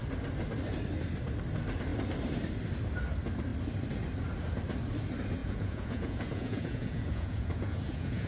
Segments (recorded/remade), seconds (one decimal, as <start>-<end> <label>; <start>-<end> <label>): 0.0-5.4 recorded; 5.4-8.3 remade